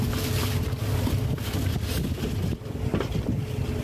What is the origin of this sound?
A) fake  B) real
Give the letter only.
B